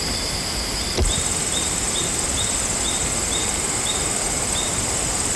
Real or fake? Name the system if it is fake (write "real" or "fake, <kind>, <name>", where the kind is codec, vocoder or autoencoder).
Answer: fake, vocoder, BigVGAN v2